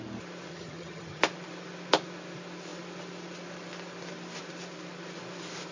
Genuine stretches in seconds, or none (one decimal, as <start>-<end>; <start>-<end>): 0.0-0.5; 1.2-5.7